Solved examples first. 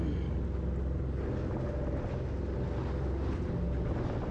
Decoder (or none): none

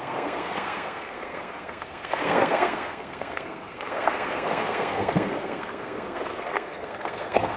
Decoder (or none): codec, SNAC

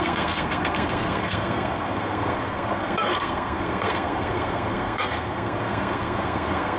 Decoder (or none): codec, SNAC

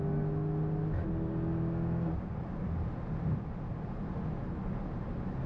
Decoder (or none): none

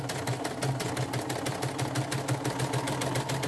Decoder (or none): none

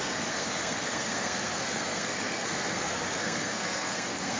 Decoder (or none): codec, SNAC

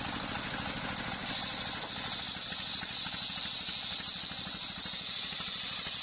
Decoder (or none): none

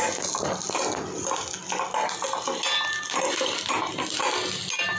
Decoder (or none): none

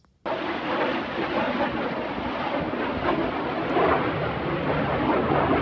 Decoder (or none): none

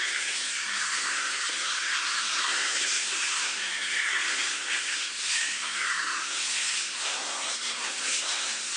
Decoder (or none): codec, SNAC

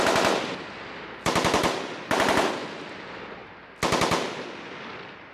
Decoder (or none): none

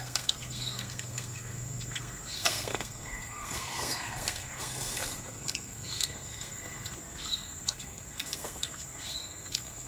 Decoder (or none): codec, SNAC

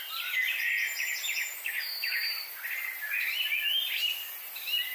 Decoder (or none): none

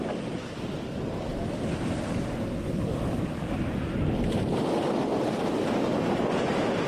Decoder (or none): none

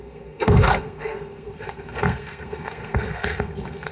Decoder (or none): codec, SNAC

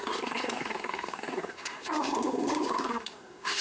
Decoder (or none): codec, SNAC